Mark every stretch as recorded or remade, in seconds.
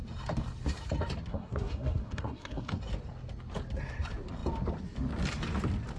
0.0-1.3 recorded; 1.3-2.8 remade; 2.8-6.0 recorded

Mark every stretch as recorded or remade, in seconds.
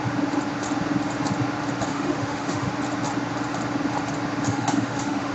0.0-1.9 recorded; 1.9-2.7 remade; 2.7-4.5 recorded; 4.5-5.3 remade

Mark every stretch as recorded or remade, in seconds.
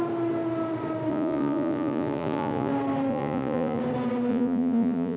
0.0-1.1 recorded; 1.1-2.7 remade; 2.7-3.1 recorded; 3.1-3.8 remade; 3.8-4.3 recorded; 4.3-5.2 remade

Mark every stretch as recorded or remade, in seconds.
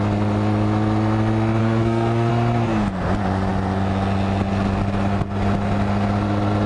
0.0-1.6 recorded; 1.6-2.3 remade; 2.3-6.7 recorded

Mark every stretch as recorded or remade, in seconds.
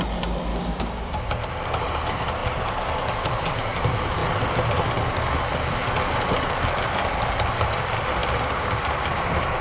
0.0-0.5 recorded; 0.5-1.3 remade; 1.3-8.2 recorded; 8.2-8.8 remade; 8.8-9.6 recorded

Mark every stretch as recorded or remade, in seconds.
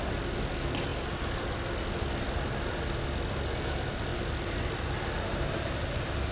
0.0-4.1 recorded; 4.1-6.3 remade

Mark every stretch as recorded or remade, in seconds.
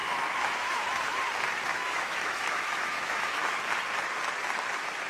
0.0-1.2 remade; 1.2-1.7 recorded; 1.7-3.7 remade; 3.7-5.1 recorded